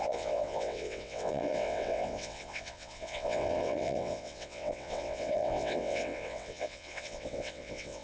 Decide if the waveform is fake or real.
fake